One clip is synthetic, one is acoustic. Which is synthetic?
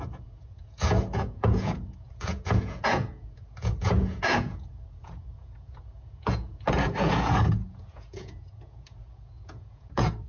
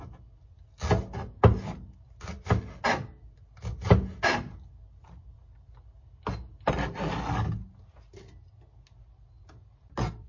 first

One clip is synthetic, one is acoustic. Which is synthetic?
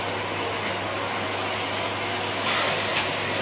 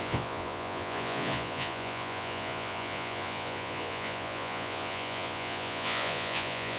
second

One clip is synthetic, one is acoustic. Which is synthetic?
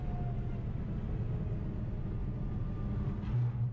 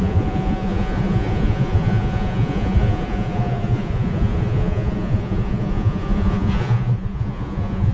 second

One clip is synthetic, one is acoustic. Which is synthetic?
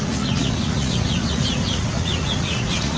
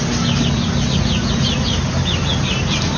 first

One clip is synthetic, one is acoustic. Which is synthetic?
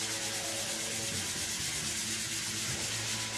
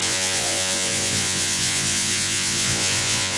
second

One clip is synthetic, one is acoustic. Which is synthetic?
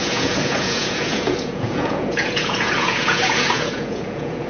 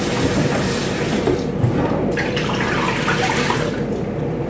first